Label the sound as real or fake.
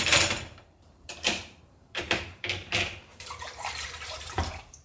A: fake